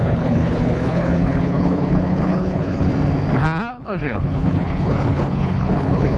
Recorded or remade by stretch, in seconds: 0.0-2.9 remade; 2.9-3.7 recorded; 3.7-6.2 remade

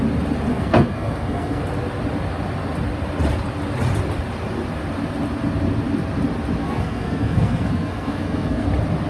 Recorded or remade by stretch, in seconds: 0.0-0.5 recorded; 0.5-1.6 remade; 1.6-6.6 recorded; 6.6-8.7 remade; 8.7-9.1 recorded

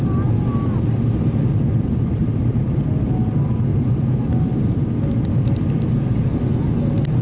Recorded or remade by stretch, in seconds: 0.0-2.2 recorded; 2.2-2.9 remade; 2.9-3.7 recorded; 3.7-4.6 remade; 4.6-7.2 recorded